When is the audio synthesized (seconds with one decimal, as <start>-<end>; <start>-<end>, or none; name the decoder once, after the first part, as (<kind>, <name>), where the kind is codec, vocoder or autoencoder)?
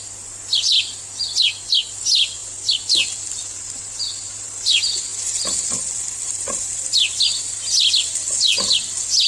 none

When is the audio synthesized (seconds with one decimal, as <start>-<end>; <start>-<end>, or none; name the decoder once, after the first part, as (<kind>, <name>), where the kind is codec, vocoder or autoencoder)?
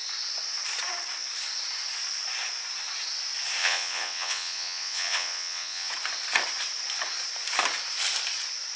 3.6-5.9 (vocoder, WaveNeXt)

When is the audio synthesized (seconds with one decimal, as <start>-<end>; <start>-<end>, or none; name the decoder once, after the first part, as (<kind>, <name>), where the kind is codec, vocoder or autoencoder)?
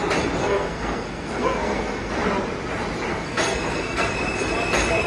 0.4-2.1 (codec, SNAC); 3.1-4.1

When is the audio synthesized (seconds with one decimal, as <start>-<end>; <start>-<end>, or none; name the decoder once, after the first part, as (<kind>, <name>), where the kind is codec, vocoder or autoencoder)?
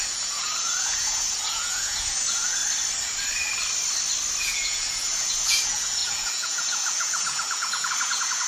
0.0-2.6 (vocoder, Vocos); 4.4-8.5